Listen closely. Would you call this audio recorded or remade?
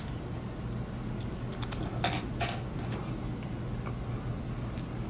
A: recorded